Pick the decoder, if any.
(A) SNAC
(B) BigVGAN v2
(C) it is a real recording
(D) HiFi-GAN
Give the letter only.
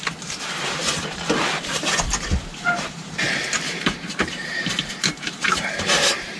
B